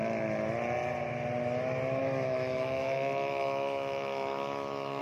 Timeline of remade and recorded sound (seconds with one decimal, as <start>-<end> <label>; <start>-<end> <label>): 0.0-2.0 recorded; 2.0-5.0 remade